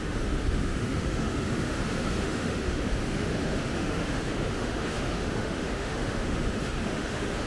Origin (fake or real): fake